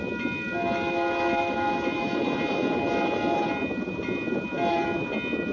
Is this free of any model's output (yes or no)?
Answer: yes